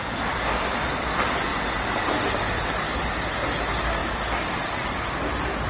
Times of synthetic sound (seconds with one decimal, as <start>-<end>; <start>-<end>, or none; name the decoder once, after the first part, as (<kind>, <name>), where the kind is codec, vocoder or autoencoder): none